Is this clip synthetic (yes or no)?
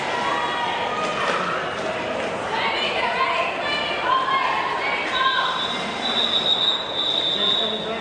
no